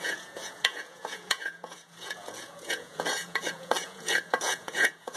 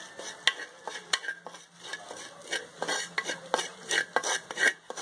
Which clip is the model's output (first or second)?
first